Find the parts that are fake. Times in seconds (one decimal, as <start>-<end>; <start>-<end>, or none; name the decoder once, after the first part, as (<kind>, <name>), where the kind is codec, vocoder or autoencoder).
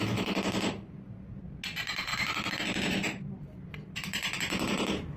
2.1-5.2 (vocoder, BigVGAN v2)